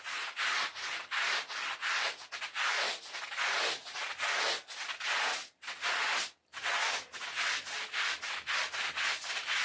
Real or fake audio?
real